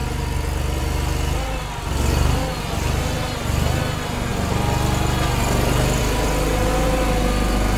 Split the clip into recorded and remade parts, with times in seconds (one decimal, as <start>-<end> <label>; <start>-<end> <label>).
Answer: 0.0-7.8 recorded